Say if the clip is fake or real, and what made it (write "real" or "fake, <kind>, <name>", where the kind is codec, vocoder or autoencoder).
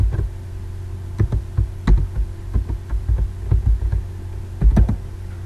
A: real